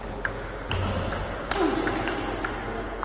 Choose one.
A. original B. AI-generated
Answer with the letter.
A